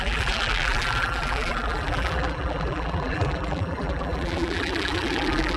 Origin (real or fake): fake